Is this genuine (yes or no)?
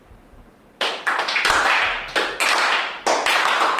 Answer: yes